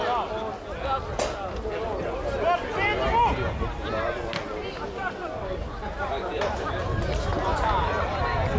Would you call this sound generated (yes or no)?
no